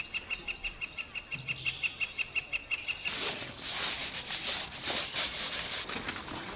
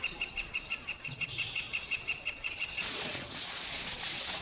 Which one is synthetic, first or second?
second